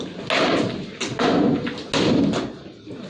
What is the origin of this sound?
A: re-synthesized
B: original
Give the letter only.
B